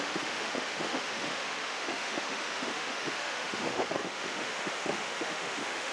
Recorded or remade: remade